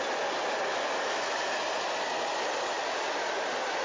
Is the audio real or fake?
real